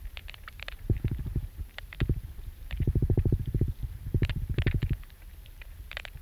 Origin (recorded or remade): remade